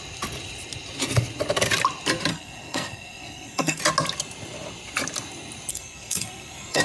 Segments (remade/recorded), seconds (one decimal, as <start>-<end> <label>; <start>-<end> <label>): 0.0-2.3 recorded; 2.3-3.8 remade; 3.8-5.7 recorded; 5.7-6.8 remade